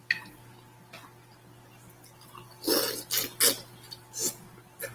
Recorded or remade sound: recorded